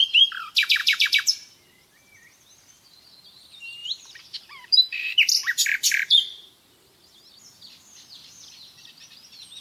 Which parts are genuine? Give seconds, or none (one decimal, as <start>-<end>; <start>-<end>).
0.0-0.8; 1.3-3.8; 6.5-9.6